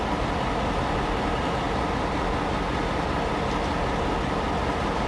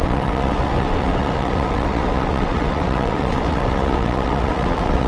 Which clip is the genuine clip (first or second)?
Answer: first